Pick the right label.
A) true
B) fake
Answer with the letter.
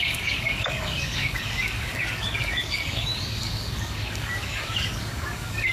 B